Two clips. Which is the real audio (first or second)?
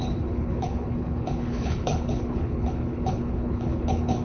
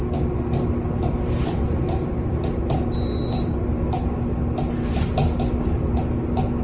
second